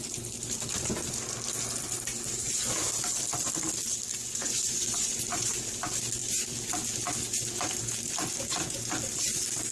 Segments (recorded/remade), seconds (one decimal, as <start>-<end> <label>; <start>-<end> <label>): 0.0-4.1 recorded; 4.1-5.6 remade; 5.6-9.7 recorded